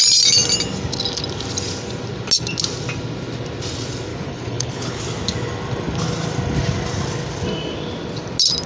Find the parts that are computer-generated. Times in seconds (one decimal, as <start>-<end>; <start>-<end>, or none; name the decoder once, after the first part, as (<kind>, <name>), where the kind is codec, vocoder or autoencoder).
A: 4.1-5.0 (codec, HILCodec)